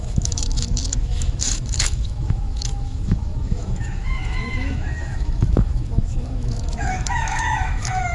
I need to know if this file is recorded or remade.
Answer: remade